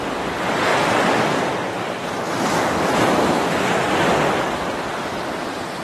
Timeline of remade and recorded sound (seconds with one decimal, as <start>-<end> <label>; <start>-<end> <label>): 0.0-5.8 recorded